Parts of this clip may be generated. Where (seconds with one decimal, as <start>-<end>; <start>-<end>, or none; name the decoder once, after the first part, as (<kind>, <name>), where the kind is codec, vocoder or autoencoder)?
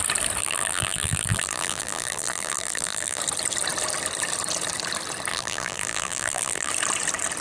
0.4-3.2 (vocoder, BigVGAN v2); 5.3-6.7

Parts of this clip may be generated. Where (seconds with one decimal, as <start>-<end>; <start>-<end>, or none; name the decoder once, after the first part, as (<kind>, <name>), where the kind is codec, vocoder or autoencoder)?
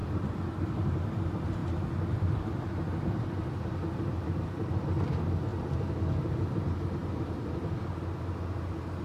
0.0-1.2 (vocoder, BigVGAN v2); 1.6-5.0; 7.0-7.7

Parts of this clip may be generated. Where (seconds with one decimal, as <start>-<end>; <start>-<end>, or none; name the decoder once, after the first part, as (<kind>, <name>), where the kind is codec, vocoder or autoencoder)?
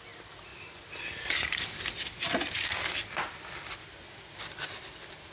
0.5-3.7 (vocoder, BigVGAN v2)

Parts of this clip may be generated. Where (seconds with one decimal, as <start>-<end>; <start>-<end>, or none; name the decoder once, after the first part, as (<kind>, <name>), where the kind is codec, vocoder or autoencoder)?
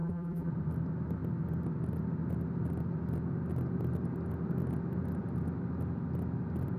0.0-0.5 (vocoder, BigVGAN v2)